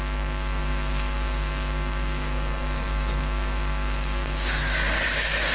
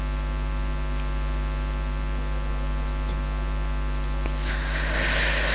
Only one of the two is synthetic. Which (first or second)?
first